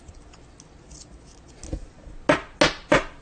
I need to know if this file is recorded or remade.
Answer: recorded